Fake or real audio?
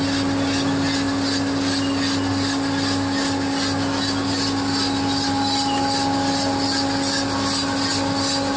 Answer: real